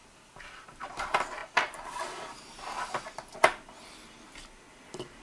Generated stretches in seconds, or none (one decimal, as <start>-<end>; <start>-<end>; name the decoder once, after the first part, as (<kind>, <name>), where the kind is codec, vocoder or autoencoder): none